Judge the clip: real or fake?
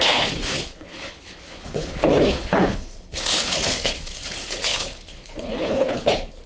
fake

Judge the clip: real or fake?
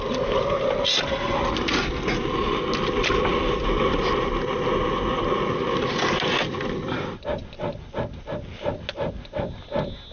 real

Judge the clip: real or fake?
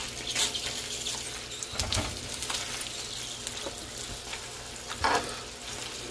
real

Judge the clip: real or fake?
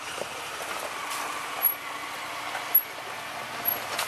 real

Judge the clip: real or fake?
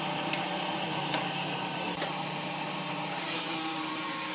fake